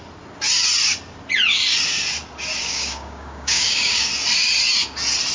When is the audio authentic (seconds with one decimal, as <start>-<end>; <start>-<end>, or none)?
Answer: 0.0-2.6; 4.1-5.3